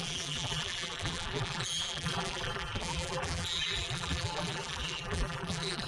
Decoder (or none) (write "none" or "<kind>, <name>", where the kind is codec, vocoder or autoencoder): vocoder, BigVGAN v2